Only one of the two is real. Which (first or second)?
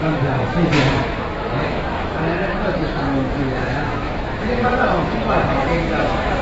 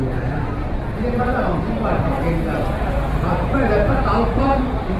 second